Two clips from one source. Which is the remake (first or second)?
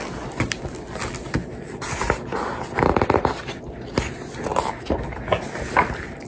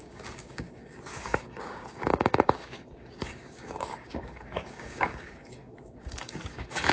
second